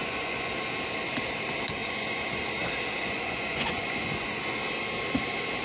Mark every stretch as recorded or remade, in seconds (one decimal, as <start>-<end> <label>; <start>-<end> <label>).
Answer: 0.0-0.5 remade; 0.5-1.8 recorded; 1.8-2.4 remade; 2.4-3.0 recorded; 3.0-4.4 remade; 4.4-5.6 recorded